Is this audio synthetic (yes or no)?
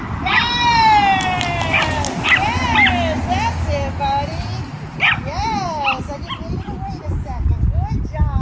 no